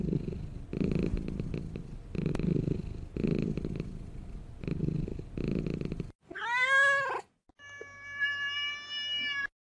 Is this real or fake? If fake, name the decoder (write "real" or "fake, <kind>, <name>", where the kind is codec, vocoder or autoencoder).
real